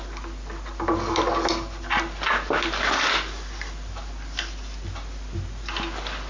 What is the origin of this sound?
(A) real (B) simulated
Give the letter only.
A